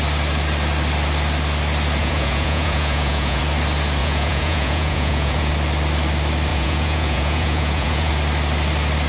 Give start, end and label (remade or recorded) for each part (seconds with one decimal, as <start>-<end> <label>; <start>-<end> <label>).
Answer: 0.0-2.0 recorded; 2.0-3.4 remade; 3.4-4.0 recorded; 4.0-5.5 remade; 5.5-6.5 recorded; 6.5-8.1 remade; 8.1-9.1 recorded